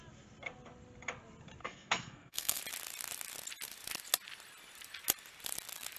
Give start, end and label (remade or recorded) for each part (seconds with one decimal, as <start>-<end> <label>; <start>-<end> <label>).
0.0-1.6 recorded; 1.6-2.6 remade; 2.6-6.0 recorded